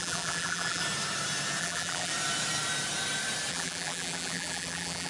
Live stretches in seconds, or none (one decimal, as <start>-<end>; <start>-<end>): 0.8-1.6; 2.1-3.5